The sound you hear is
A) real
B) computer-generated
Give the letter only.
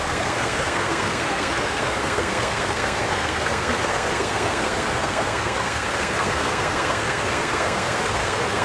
B